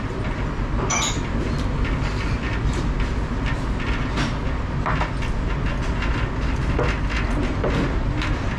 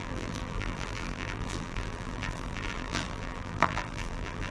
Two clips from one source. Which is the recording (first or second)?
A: first